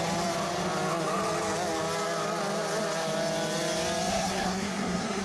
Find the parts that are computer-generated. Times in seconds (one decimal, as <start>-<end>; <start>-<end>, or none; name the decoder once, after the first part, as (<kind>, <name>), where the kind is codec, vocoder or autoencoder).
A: 4.1-5.2 (codec, SNAC)